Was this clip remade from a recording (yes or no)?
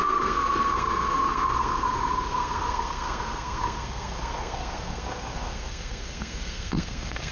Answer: yes